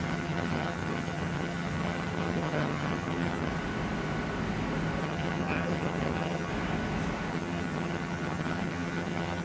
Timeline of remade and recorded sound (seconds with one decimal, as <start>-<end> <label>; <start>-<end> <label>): 0.0-3.5 remade; 3.5-5.0 recorded; 5.0-6.5 remade; 6.5-7.3 recorded; 7.3-9.4 remade